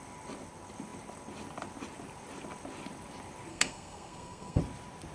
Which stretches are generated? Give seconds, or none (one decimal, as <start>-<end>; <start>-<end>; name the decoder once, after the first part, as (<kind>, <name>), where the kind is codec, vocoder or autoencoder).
3.5-4.6 (codec, SNAC)